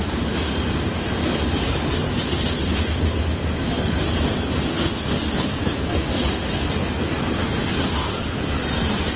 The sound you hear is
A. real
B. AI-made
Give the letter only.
A